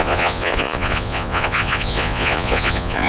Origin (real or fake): fake